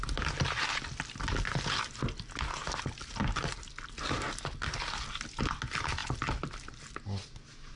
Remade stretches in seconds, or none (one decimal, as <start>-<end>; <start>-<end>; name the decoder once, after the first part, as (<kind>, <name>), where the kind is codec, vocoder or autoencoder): none